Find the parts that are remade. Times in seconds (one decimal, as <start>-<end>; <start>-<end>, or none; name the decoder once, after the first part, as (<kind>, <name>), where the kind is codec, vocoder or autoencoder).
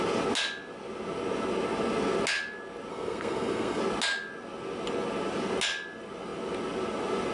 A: 2.9-3.8 (codec, SNAC)